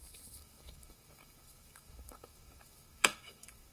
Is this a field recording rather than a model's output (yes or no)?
no